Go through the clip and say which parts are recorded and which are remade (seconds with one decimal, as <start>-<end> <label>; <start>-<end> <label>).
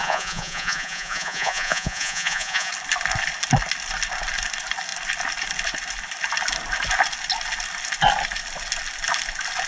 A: 0.0-2.7 remade; 2.7-9.7 recorded